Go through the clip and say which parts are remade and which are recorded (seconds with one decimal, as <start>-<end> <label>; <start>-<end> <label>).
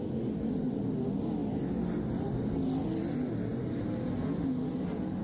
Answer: 0.0-5.2 recorded